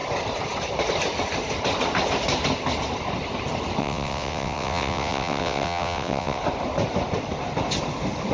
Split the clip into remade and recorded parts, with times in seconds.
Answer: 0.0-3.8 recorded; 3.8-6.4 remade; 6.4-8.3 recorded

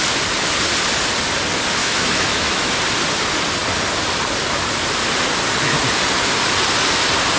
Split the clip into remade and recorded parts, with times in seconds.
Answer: 0.0-1.8 recorded; 1.8-2.8 remade; 2.8-7.4 recorded

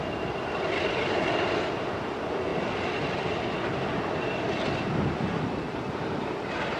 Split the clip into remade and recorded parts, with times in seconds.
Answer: 0.0-6.8 recorded

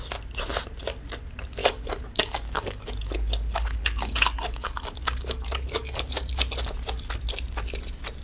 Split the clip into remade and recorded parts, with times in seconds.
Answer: 0.0-1.6 recorded; 1.6-6.1 remade; 6.1-8.2 recorded

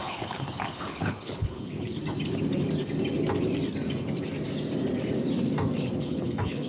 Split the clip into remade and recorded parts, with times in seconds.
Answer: 0.0-2.0 remade; 2.0-6.0 recorded; 6.0-6.7 remade